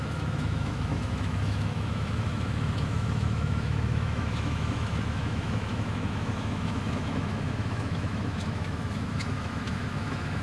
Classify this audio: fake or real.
fake